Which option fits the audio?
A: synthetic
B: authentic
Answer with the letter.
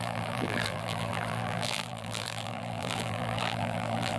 A